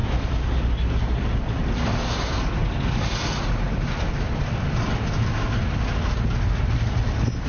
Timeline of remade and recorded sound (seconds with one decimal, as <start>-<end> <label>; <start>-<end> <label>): 0.0-7.5 recorded